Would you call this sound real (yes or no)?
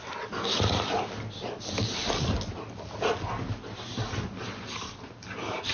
yes